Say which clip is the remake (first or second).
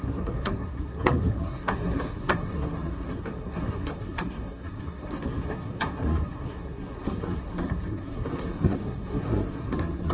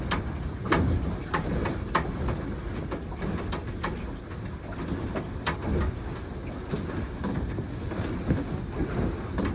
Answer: first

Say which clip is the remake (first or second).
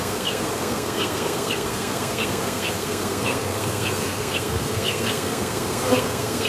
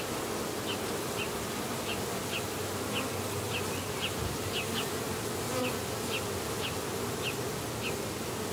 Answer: first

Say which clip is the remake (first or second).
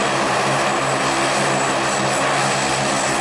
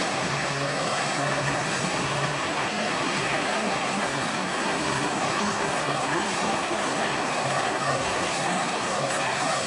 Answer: second